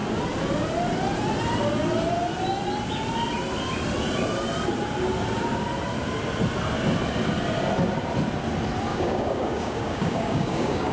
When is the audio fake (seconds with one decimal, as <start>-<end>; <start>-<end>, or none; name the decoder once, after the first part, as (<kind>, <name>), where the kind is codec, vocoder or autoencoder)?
8.9-10.9 (codec, DAC)